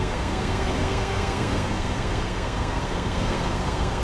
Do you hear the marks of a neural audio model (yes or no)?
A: yes